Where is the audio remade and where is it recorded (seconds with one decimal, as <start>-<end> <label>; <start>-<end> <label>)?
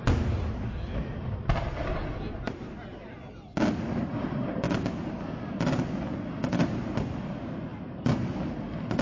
0.0-9.0 recorded